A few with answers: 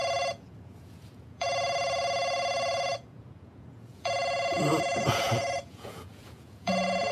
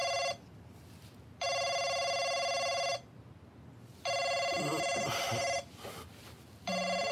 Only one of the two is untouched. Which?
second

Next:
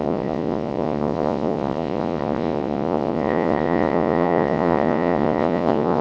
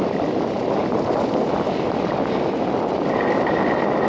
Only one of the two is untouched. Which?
second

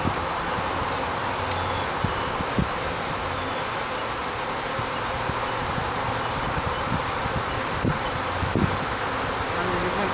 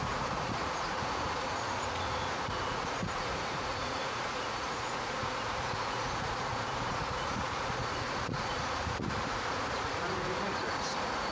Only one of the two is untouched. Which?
first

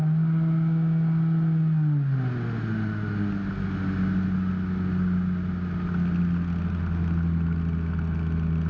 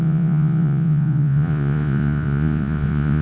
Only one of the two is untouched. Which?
first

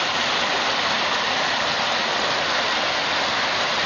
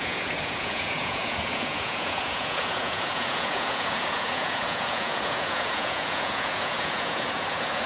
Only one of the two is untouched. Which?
first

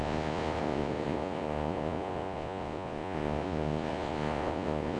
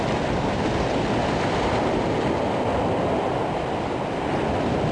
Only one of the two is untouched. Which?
second